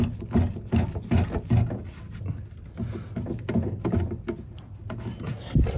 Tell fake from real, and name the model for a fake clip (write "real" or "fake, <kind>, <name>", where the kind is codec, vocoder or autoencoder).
real